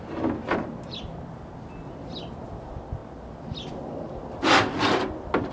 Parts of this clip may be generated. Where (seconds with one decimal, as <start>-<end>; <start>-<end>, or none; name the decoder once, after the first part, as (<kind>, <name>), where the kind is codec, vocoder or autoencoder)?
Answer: none